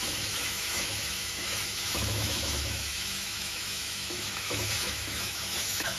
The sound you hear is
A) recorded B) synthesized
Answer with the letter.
B